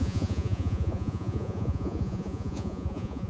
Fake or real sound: fake